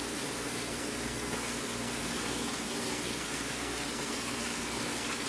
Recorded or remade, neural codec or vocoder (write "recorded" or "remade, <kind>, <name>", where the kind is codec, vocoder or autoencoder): remade, codec, SNAC